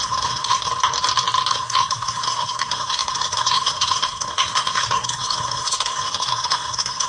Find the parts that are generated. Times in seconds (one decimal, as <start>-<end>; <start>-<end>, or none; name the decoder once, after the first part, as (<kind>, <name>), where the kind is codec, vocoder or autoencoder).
0.0-0.7 (codec, SNAC); 1.5-7.1

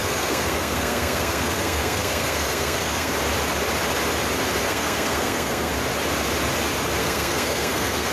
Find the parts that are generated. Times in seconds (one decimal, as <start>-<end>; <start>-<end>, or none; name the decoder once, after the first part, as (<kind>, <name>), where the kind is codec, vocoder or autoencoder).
0.0-3.1 (codec, SNAC); 4.6-5.7; 7.0-8.1

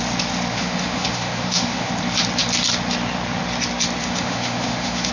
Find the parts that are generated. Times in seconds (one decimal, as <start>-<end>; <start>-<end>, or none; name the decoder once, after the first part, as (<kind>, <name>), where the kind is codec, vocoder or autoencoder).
0.5-1.9 (autoencoder, DAC-VAE); 4.0-5.1

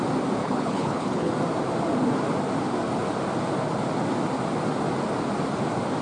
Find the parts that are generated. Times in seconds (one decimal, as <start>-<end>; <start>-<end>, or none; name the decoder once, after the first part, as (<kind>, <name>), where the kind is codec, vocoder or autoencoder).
0.4-1.3 (codec, HILCodec)